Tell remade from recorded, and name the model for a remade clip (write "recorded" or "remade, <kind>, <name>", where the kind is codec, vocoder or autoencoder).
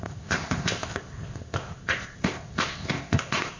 remade, codec, ZipCodec